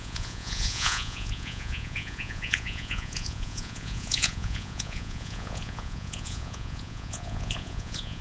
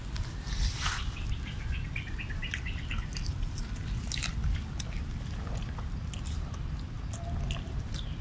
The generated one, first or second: first